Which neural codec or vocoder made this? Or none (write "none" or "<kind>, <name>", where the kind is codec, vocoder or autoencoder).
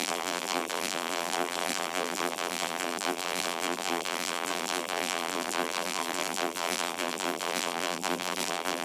vocoder, BigVGAN v2